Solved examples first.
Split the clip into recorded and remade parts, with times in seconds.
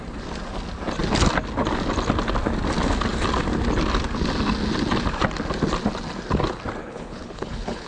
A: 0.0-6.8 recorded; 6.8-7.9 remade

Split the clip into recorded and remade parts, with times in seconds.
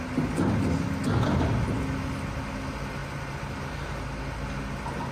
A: 0.0-5.1 recorded